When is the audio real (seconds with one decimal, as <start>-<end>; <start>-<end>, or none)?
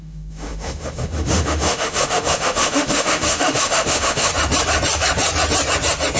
4.3-6.2